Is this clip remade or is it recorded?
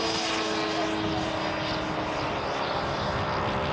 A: recorded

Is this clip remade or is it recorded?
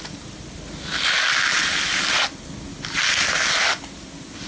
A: recorded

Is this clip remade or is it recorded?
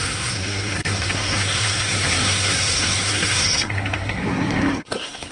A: remade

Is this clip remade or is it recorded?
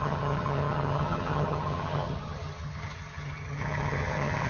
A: remade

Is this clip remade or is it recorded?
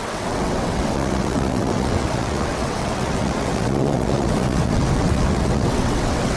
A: remade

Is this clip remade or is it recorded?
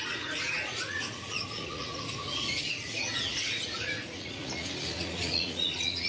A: remade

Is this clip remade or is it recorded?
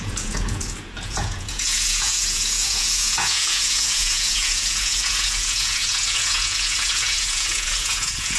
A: remade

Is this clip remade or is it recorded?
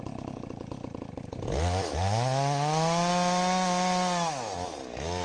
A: recorded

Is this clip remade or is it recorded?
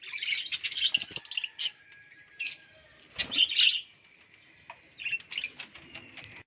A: recorded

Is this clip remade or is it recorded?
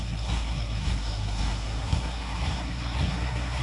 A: remade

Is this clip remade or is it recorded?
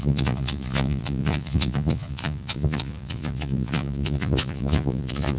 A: remade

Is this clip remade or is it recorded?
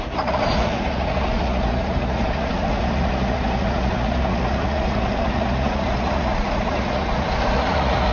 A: remade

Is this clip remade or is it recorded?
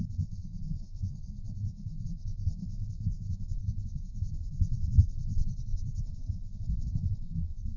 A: remade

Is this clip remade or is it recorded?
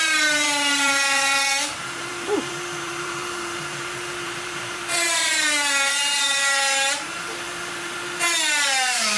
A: remade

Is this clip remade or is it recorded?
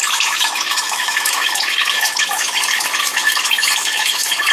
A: remade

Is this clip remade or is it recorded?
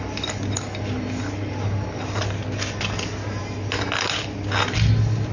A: recorded